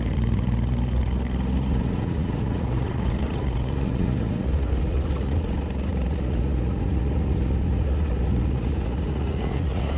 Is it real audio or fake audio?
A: fake